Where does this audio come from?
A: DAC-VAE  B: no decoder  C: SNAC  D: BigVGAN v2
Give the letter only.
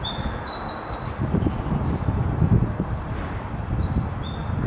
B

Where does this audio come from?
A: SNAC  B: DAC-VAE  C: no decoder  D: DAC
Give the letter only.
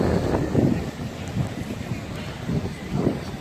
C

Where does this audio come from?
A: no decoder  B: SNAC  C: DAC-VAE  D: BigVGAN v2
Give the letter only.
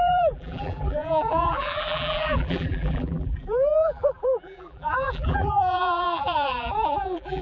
D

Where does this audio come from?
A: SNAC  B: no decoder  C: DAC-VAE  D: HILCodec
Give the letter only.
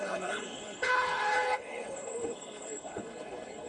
D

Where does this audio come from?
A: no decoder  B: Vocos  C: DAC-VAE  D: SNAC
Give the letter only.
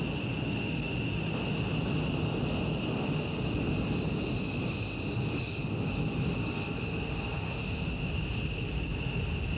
A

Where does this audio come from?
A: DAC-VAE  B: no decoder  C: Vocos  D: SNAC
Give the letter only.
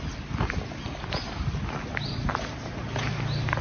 B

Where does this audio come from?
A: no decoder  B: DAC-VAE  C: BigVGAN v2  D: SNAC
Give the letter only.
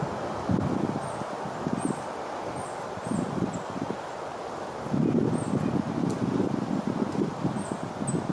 A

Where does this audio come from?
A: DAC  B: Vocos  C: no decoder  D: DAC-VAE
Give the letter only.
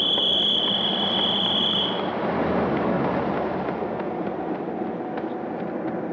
C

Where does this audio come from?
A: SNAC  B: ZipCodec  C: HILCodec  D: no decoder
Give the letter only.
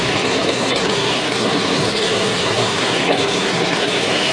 A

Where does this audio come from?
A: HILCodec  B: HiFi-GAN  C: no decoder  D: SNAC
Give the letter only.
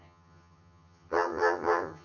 B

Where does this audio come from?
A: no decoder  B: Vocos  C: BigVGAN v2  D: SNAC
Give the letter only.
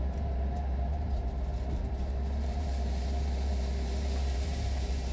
C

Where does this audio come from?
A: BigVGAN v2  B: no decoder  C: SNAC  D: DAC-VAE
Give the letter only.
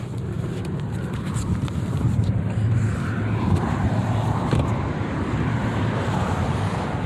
A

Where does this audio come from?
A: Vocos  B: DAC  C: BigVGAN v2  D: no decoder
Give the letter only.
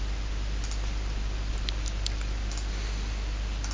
D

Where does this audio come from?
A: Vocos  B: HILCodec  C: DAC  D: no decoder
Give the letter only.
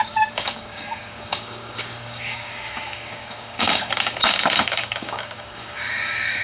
C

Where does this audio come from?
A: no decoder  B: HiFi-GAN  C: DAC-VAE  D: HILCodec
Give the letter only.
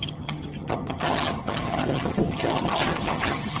B